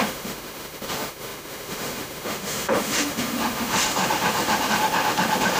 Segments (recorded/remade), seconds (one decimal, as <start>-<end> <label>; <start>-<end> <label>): 0.0-5.6 remade